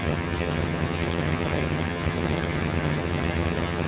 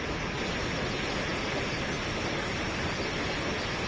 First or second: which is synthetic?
first